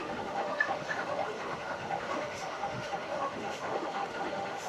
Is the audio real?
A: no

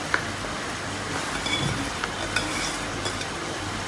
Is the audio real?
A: yes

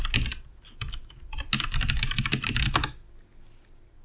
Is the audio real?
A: yes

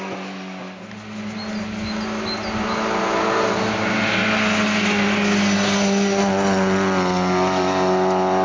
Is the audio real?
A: yes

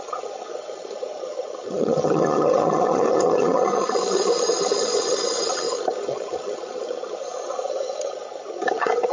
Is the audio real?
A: no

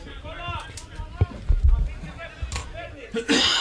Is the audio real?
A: yes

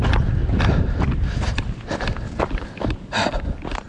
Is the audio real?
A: yes